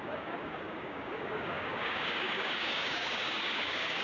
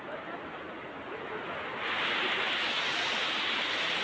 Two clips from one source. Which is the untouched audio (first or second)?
second